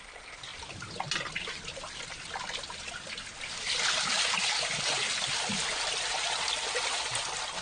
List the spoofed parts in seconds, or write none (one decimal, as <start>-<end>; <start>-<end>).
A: none